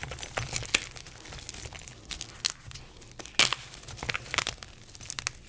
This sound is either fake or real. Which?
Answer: real